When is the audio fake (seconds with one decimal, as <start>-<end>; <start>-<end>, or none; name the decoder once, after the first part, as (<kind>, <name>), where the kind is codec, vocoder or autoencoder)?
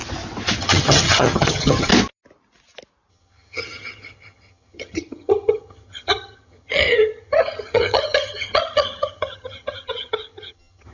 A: 0.6-1.9 (vocoder, HiFi-GAN); 3.1-10.9